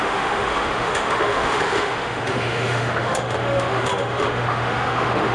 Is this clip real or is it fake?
fake